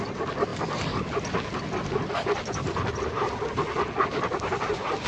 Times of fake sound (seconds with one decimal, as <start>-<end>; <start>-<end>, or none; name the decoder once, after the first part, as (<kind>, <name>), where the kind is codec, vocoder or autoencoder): none